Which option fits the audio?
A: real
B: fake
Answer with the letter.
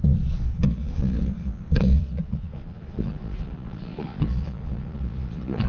B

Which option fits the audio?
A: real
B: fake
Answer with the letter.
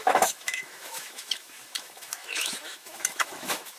B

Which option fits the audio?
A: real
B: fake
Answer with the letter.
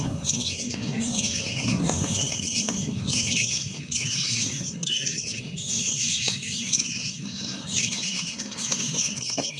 B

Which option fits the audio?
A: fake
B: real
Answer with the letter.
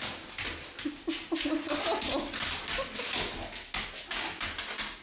B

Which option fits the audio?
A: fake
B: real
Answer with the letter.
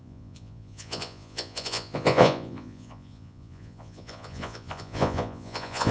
A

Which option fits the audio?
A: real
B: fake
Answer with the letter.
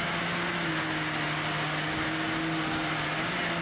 A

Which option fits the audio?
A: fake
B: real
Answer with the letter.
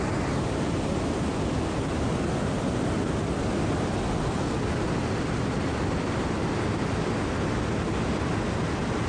B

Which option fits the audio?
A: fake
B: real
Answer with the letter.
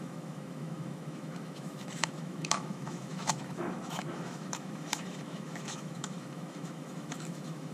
A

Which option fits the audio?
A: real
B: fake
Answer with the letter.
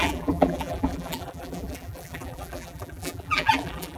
B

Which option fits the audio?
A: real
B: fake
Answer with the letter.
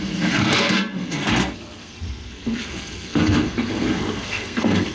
B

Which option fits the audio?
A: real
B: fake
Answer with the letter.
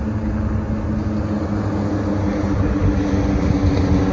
A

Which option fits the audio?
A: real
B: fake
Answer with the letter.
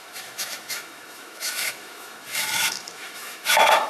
B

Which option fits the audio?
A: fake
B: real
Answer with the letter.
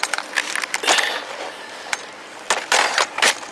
B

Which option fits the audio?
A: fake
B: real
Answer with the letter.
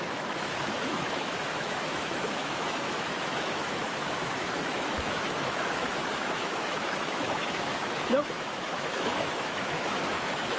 A